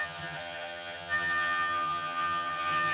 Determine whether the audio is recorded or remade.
remade